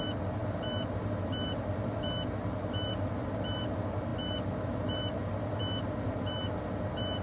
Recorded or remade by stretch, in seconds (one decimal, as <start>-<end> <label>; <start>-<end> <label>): 0.0-7.2 recorded